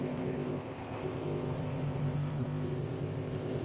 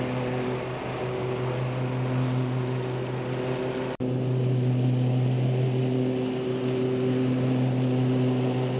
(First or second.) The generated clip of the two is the first